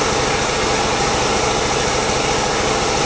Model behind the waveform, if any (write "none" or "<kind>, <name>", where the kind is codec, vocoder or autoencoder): none